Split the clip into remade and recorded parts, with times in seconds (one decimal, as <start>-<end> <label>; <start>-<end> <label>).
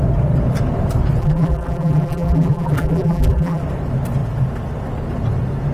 0.0-1.2 recorded; 1.2-3.6 remade; 3.6-5.7 recorded